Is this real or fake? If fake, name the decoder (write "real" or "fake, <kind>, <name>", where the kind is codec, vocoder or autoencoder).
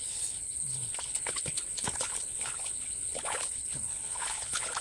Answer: fake, codec, HILCodec